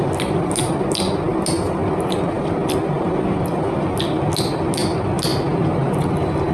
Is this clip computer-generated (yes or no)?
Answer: no